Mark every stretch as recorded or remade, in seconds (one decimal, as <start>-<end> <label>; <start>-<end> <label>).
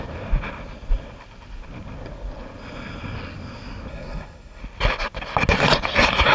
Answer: 0.0-3.9 recorded; 3.9-4.6 remade; 4.6-6.3 recorded